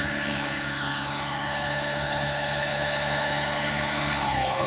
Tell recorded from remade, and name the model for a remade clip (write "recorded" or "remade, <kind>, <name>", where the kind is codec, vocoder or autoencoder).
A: remade, codec, HILCodec